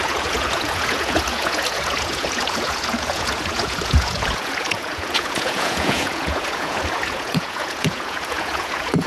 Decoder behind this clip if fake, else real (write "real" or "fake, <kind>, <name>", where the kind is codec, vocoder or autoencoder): fake, vocoder, Vocos